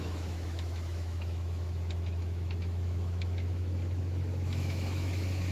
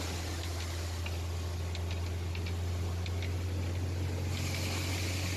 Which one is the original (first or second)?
second